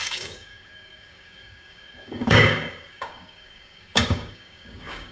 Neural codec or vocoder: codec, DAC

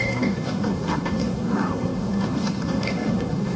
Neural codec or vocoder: codec, SNAC